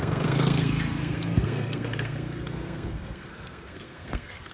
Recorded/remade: remade